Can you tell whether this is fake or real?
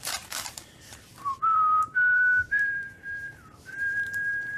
fake